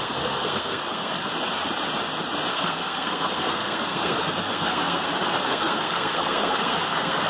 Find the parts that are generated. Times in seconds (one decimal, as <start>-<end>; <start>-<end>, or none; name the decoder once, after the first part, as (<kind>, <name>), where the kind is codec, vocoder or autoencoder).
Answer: 0.0-1.3 (codec, SNAC); 2.5-7.3